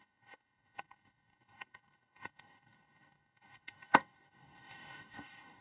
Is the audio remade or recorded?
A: remade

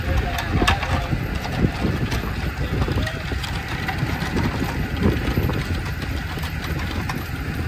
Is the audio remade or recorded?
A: recorded